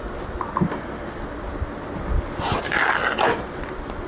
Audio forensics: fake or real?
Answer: real